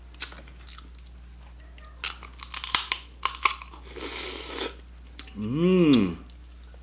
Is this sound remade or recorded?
recorded